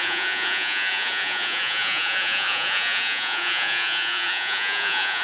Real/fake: fake